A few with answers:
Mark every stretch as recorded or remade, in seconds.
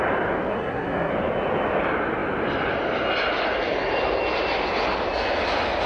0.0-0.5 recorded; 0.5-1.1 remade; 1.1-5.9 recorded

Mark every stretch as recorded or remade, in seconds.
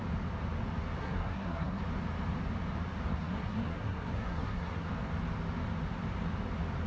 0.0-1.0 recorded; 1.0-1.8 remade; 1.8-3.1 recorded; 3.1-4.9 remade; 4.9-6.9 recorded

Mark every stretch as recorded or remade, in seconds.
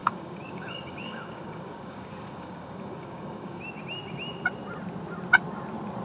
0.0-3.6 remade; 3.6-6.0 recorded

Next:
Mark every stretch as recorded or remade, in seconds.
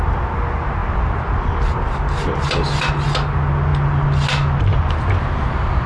0.0-5.9 recorded